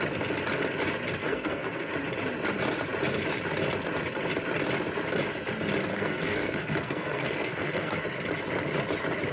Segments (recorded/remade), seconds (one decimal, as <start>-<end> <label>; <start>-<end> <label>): 0.0-1.2 recorded; 1.2-1.9 remade; 1.9-5.9 recorded; 5.9-8.0 remade; 8.0-9.3 recorded